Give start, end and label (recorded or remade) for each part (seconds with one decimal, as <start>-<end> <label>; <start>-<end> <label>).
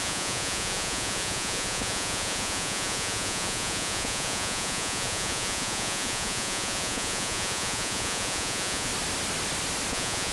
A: 0.0-8.9 remade; 8.9-9.9 recorded; 9.9-10.3 remade